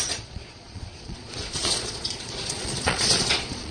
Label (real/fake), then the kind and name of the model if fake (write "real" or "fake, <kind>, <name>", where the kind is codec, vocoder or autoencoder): fake, vocoder, Vocos